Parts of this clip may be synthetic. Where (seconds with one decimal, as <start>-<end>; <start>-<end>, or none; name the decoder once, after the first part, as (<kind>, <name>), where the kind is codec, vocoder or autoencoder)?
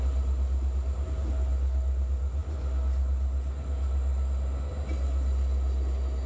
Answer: none